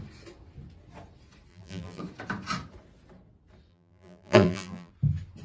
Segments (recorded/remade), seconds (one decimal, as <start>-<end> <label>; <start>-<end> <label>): 0.0-1.5 recorded; 1.5-2.0 remade; 2.0-3.7 recorded; 3.7-4.9 remade; 4.9-5.4 recorded